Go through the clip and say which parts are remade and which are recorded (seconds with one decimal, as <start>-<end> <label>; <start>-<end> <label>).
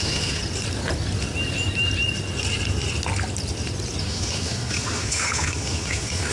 0.0-0.4 remade; 0.4-4.0 recorded; 4.0-6.3 remade